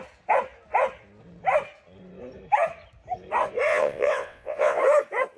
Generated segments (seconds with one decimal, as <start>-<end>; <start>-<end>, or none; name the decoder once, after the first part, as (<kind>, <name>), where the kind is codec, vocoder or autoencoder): 3.7-4.8 (vocoder, WaveNeXt)